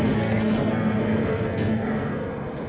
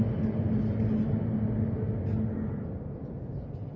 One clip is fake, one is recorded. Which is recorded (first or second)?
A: second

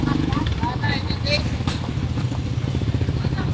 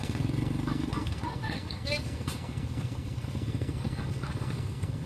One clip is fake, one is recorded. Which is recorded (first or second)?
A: first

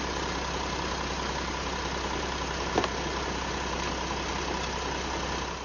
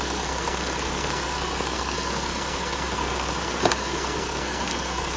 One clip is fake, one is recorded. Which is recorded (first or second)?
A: first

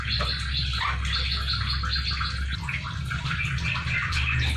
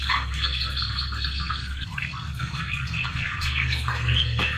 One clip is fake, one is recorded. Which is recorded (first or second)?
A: first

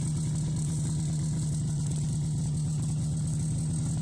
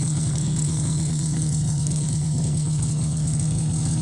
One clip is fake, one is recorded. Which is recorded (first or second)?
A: first